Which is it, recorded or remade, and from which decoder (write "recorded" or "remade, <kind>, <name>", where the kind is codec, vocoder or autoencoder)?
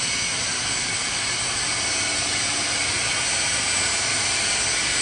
recorded